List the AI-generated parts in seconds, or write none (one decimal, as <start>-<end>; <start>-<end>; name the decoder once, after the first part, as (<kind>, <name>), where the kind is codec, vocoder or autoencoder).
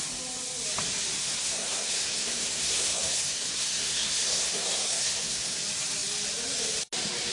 1.2-5.6 (codec, SNAC)